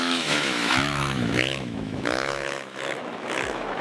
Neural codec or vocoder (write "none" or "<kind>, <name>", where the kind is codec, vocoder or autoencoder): autoencoder, DAC-VAE